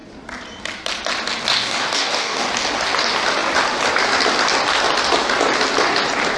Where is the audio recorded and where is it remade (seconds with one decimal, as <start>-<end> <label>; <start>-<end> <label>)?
0.0-1.6 recorded; 1.6-2.5 remade; 2.5-6.4 recorded